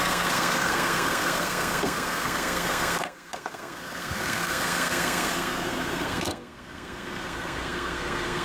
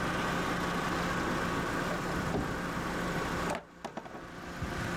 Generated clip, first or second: first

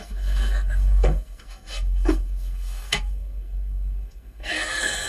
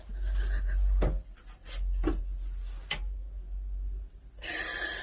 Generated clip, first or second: first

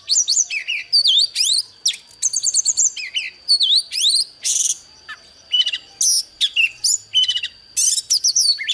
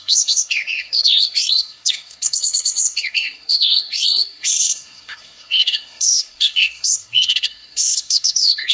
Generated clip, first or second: second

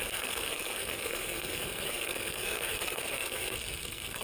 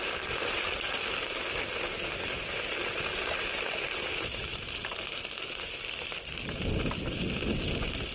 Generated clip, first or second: first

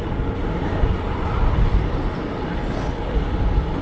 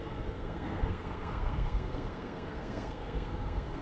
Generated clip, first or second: second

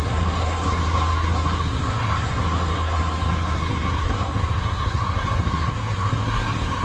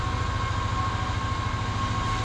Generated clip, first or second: first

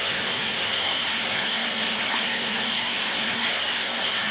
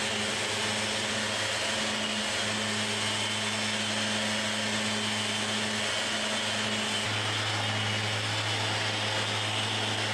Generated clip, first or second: first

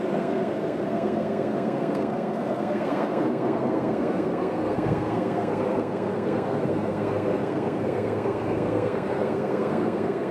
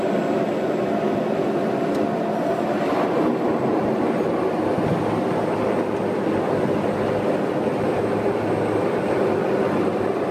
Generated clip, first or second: first